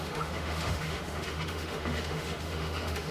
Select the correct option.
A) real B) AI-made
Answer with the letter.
B